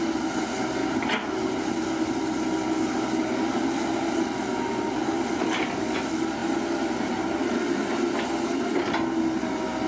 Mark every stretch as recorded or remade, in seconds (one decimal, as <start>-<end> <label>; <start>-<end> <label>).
0.0-9.9 recorded